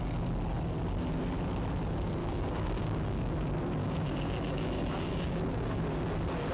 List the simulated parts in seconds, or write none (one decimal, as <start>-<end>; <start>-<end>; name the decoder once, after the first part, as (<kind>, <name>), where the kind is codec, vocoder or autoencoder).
2.2-3.3 (codec, DAC); 3.8-5.8